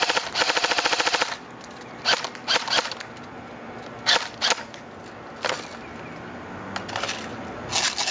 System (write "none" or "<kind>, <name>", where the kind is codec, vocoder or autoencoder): none